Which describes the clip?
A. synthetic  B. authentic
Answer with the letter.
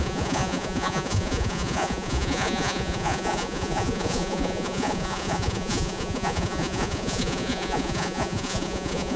A